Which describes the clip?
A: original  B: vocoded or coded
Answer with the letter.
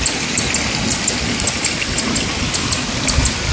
A